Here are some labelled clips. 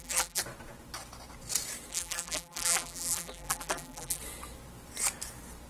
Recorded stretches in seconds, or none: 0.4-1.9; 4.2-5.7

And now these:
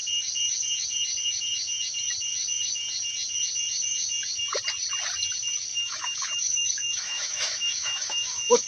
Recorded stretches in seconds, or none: 0.0-5.7

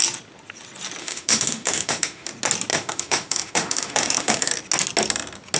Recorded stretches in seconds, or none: 0.0-1.0; 2.3-2.7; 4.5-5.6

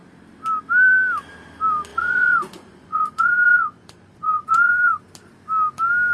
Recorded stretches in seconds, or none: 0.0-1.9; 5.0-6.1

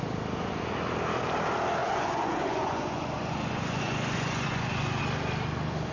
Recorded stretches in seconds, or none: 0.0-1.8; 5.0-5.9